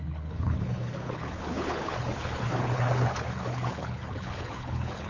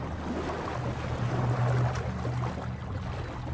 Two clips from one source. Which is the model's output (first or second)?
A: first